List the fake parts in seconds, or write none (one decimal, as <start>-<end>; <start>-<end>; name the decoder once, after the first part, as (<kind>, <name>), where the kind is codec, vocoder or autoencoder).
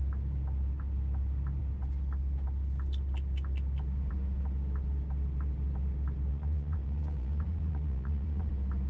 6.3-8.5 (vocoder, Vocos)